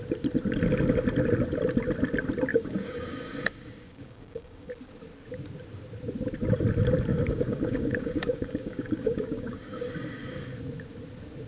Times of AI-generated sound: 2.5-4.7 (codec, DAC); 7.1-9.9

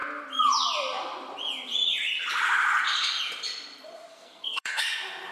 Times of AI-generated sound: 4.1-4.8 (codec, SNAC)

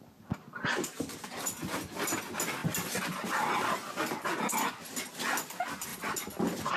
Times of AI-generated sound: none

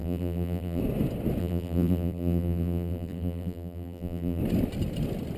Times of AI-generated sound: 0.0-0.8 (vocoder, BigVGAN v2); 1.4-4.4

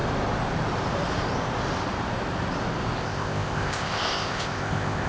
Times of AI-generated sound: 3.0-5.1 (codec, ZipCodec)

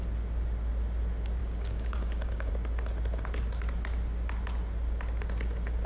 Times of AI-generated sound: 1.4-2.5 (codec, DAC)